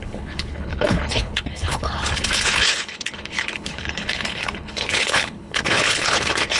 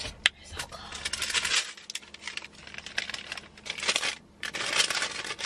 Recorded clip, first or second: second